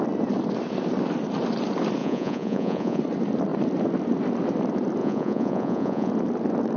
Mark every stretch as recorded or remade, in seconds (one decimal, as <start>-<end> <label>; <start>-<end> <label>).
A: 0.0-2.0 recorded; 2.0-3.0 remade; 3.0-5.0 recorded; 5.0-6.1 remade; 6.1-6.8 recorded